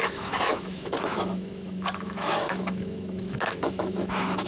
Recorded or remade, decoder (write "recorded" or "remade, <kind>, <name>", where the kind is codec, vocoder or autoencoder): remade, autoencoder, DAC-VAE